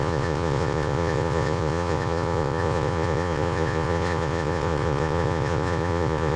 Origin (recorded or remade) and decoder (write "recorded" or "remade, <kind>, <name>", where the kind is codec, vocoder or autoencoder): remade, vocoder, Vocos